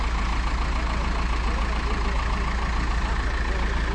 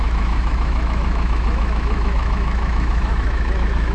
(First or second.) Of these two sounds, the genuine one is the first